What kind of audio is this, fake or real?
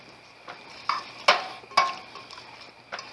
real